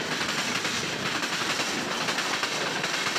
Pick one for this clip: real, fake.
fake